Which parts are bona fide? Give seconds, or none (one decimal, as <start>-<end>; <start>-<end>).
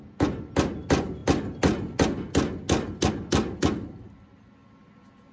0.0-5.3